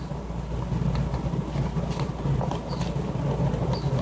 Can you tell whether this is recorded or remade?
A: recorded